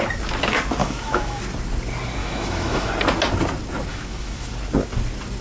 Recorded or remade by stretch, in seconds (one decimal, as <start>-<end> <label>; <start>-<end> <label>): 0.0-0.8 recorded; 0.8-1.4 remade; 1.4-2.2 recorded; 2.2-2.9 remade; 2.9-3.9 recorded; 3.9-4.5 remade; 4.5-5.4 recorded